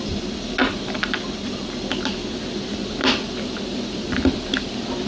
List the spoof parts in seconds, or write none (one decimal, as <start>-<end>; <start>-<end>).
0.0-0.6; 1.5-2.2; 2.9-5.1